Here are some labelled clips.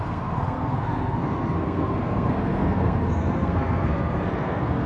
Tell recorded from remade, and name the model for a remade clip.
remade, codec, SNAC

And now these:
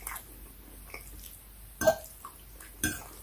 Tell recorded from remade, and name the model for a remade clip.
recorded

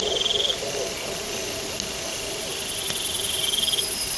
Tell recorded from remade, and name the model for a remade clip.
recorded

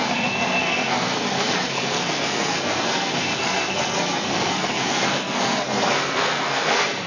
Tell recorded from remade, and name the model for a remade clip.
remade, codec, SNAC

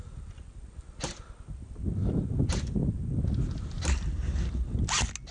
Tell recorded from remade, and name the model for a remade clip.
recorded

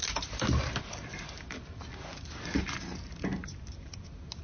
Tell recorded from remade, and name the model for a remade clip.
recorded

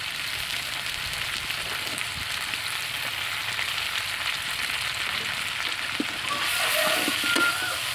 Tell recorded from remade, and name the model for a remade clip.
recorded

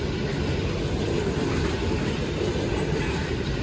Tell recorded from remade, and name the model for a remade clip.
recorded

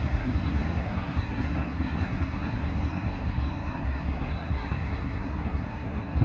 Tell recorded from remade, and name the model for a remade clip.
remade, codec, SNAC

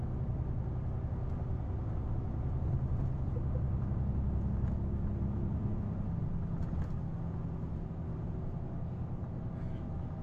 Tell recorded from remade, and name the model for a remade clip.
recorded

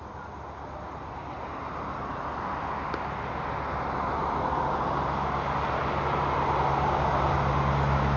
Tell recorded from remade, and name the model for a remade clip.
recorded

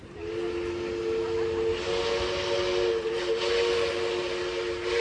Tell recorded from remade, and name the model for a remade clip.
recorded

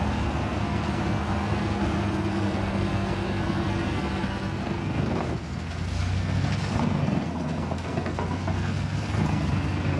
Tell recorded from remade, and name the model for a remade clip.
remade, codec, SNAC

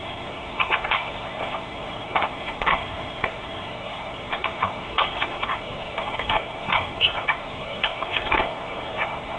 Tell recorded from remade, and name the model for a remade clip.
remade, codec, SNAC